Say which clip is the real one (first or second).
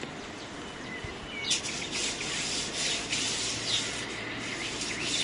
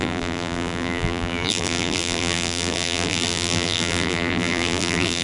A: first